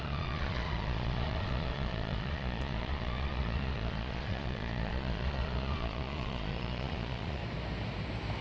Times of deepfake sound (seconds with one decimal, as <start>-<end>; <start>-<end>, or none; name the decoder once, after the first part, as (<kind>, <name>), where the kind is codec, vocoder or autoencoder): 0.0-7.4 (vocoder, Vocos)